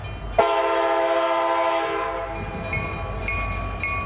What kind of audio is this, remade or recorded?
recorded